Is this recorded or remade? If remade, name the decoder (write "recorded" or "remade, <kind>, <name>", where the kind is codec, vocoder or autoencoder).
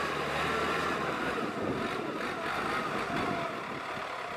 recorded